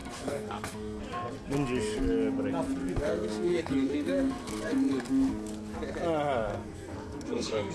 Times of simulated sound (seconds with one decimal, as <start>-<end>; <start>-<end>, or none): 0.0-1.0; 2.8-5.1; 6.5-7.7